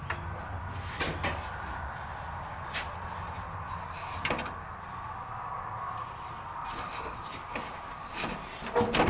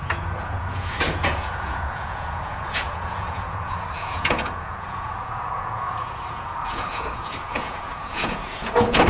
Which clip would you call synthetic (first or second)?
second